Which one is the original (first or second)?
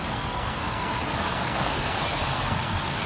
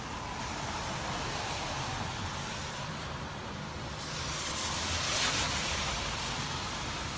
second